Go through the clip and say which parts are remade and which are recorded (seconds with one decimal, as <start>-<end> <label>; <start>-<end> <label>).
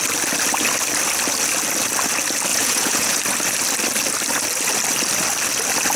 0.0-2.5 recorded; 2.5-3.2 remade; 3.2-6.0 recorded